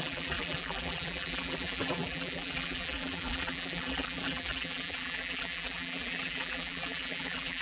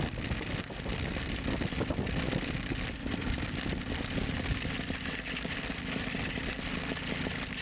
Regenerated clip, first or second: first